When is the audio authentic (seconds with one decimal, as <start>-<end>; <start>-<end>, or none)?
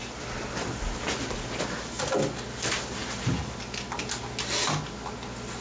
0.0-5.6